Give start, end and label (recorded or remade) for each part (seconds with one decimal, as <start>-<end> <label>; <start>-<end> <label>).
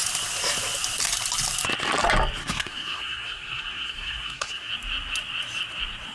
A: 0.0-2.4 recorded; 2.4-4.7 remade; 4.7-6.1 recorded